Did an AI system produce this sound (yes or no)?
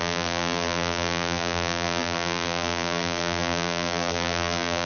yes